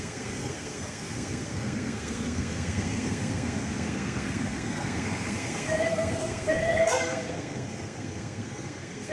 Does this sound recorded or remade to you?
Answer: remade